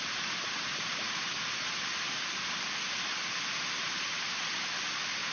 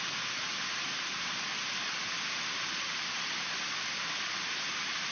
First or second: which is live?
first